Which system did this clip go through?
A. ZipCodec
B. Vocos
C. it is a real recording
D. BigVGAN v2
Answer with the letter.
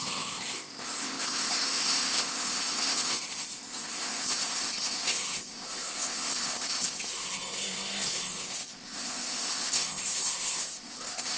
A